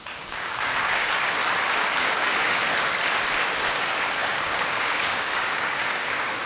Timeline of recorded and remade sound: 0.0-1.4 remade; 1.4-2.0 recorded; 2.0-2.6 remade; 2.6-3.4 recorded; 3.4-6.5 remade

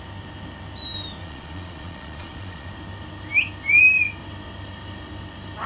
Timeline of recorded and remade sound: 0.0-1.2 recorded; 1.2-2.7 remade; 2.7-5.7 recorded

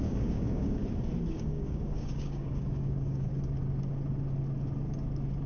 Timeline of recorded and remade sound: 0.0-0.8 remade; 0.8-1.3 recorded; 1.3-3.3 remade; 3.3-5.5 recorded

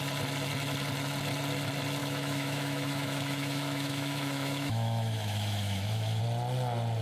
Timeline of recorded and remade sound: 0.0-2.0 recorded; 2.0-6.2 remade; 6.2-7.0 recorded

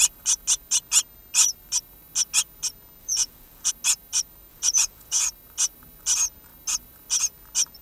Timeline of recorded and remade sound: 0.0-3.0 recorded; 3.0-3.7 remade; 3.7-4.5 recorded; 4.5-5.2 remade; 5.2-7.8 recorded

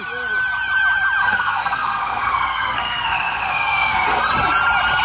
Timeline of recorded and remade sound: 0.0-1.2 recorded; 1.2-4.2 remade; 4.2-5.0 recorded

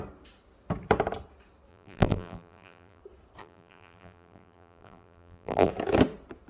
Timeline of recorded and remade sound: 0.0-1.7 recorded; 1.7-3.0 remade; 3.0-3.4 recorded; 3.4-5.7 remade; 5.7-6.5 recorded